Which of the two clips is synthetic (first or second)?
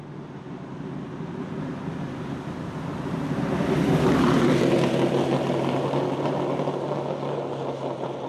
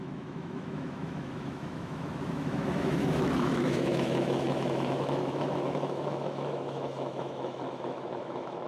second